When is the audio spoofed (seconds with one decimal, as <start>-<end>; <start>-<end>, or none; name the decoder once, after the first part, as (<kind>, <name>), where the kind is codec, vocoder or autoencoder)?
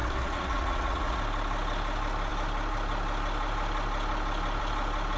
0.0-1.2 (vocoder, Vocos)